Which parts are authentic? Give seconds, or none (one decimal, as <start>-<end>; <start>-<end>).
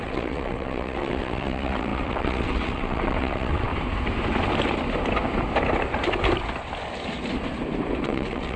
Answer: 3.7-8.0